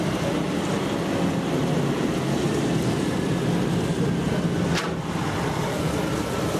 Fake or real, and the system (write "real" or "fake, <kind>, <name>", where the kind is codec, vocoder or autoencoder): real